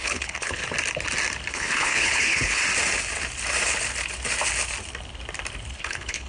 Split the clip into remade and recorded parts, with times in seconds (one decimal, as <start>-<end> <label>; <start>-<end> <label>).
0.0-0.6 remade; 0.6-1.5 recorded; 1.5-2.6 remade; 2.6-5.8 recorded; 5.8-6.3 remade